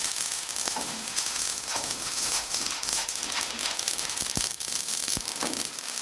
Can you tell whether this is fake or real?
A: fake